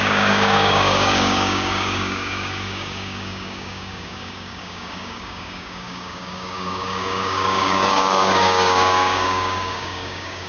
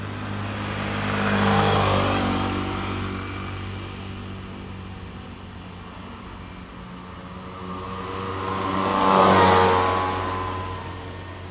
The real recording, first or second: second